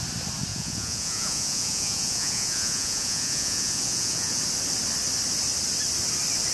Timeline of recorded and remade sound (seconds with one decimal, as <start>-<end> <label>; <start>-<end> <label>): 0.0-0.5 recorded; 0.5-4.4 remade; 4.4-6.5 recorded